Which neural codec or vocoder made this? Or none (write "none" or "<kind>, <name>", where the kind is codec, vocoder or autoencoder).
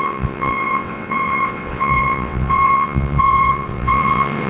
vocoder, WaveNeXt